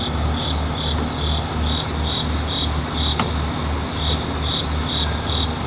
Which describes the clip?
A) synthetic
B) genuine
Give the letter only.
B